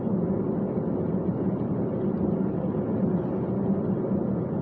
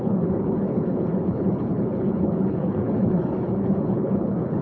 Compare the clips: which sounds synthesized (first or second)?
second